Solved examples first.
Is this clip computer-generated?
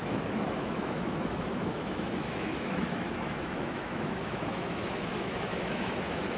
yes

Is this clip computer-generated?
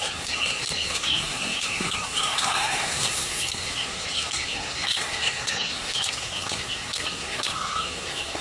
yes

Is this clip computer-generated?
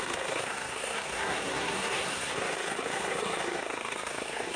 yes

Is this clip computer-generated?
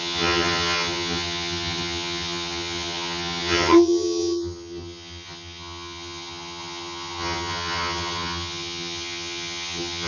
yes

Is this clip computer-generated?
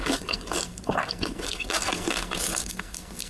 yes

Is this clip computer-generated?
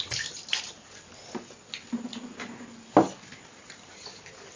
no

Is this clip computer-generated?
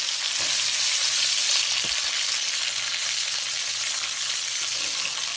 no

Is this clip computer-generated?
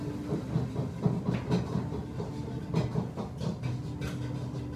no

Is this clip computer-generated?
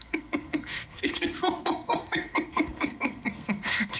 yes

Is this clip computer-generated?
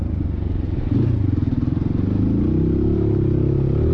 no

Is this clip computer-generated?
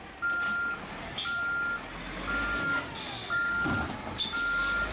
no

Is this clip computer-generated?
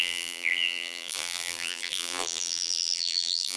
yes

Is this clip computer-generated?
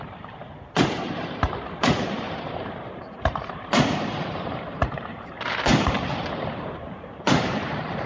yes